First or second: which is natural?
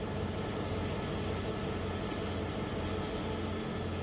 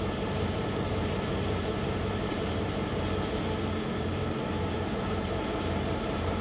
first